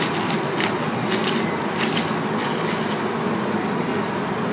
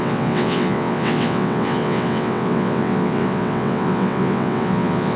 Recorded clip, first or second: first